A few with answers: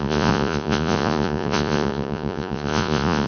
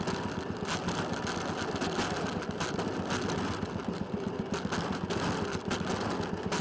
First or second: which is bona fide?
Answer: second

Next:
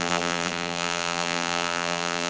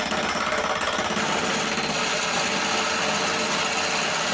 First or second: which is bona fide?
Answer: second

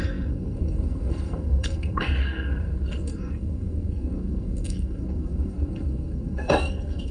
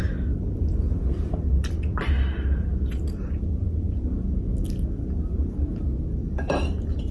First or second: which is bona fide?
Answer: second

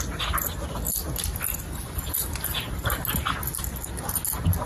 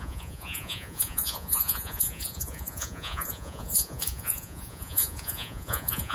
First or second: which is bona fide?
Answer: first